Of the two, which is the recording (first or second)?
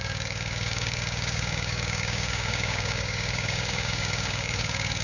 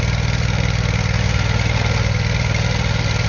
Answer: second